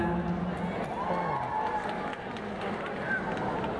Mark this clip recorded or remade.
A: recorded